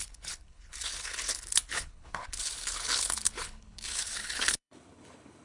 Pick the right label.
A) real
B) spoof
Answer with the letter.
B